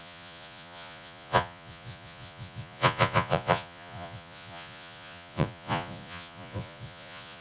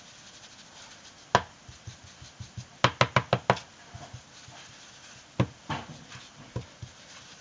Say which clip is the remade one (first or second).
first